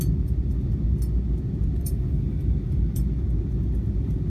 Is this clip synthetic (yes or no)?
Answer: no